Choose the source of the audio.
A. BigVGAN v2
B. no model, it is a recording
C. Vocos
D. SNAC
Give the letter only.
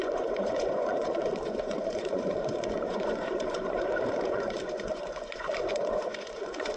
C